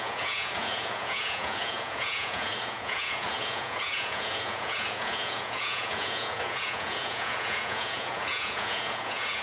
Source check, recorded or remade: remade